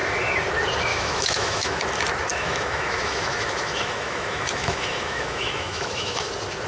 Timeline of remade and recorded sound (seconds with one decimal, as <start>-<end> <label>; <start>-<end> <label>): 0.0-0.9 recorded; 0.9-1.8 remade; 1.8-2.3 recorded; 2.3-6.3 remade; 6.3-6.7 recorded